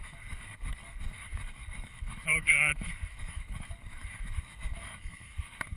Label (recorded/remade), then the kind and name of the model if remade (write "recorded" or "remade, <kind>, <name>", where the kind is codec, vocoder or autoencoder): remade, codec, DAC